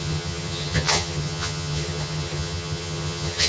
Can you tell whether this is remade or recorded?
remade